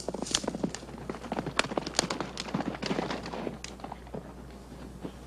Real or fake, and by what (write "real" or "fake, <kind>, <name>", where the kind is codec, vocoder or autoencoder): real